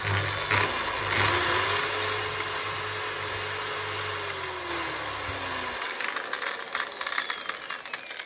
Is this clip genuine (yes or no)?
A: yes